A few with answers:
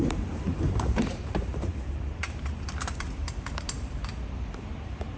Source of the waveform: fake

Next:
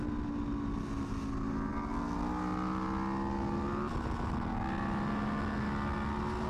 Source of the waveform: real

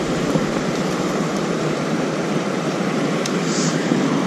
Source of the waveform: fake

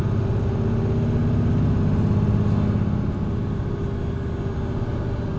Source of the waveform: real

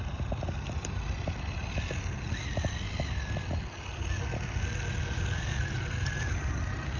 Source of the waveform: real